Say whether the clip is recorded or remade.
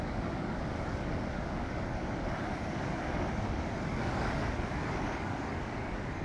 remade